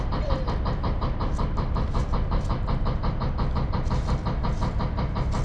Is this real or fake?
real